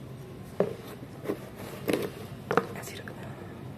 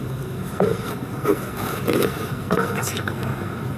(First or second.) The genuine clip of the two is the first